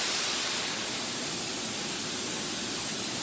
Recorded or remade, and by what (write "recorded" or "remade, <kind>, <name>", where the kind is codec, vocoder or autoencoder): recorded